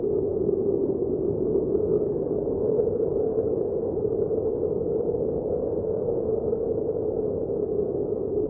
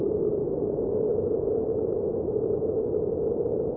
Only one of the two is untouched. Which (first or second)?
second